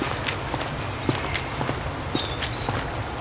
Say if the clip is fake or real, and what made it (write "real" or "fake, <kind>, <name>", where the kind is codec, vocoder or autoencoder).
real